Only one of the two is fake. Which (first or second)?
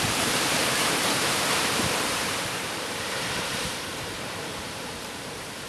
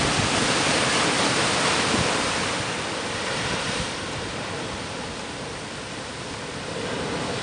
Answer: first